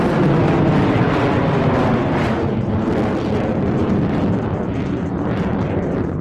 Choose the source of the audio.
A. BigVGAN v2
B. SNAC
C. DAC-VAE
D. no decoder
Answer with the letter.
A